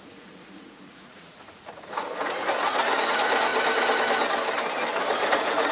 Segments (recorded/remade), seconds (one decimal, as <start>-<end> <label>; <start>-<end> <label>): 0.0-3.5 remade; 3.5-5.0 recorded; 5.0-5.7 remade